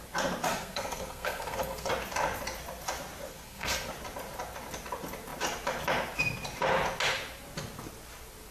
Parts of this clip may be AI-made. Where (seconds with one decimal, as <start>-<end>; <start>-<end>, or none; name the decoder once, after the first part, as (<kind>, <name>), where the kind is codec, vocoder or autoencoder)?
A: 0.5-1.9 (codec, SNAC); 3.3-3.9